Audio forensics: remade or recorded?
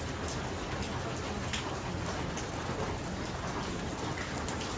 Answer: recorded